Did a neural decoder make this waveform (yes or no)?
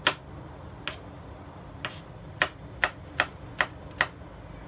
no